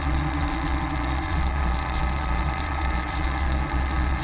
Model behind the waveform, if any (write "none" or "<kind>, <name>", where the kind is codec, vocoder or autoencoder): vocoder, Vocos